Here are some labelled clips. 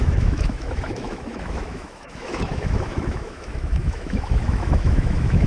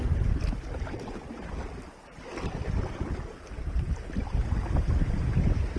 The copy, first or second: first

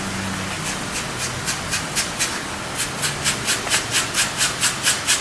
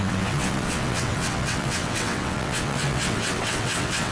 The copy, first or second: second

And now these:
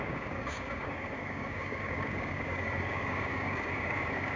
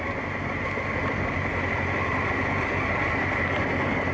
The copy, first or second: first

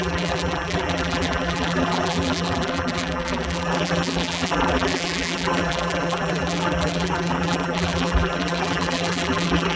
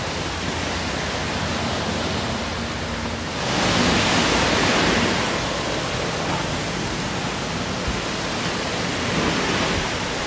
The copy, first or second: first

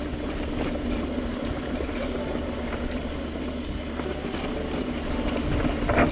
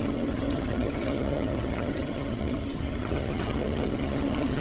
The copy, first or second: second